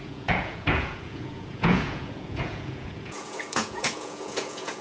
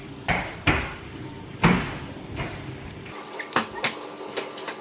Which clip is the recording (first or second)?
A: second